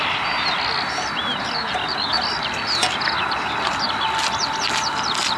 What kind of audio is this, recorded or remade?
recorded